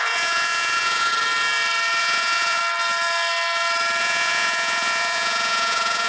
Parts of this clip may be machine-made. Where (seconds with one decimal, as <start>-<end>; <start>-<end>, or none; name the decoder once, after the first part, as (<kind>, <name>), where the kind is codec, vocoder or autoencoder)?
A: 0.0-1.1 (vocoder, Vocos); 2.0-2.6; 4.0-6.1